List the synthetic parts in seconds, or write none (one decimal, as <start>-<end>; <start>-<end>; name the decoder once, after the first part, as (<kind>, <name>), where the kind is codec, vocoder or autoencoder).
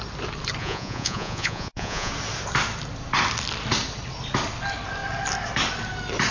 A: 0.6-2.1 (vocoder, Vocos)